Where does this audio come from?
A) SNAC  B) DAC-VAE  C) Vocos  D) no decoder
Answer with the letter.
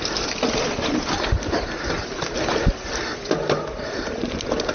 D